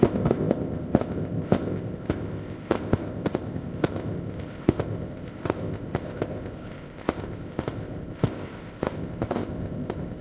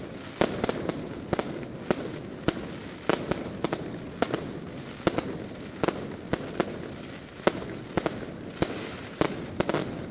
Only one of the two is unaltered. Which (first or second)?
second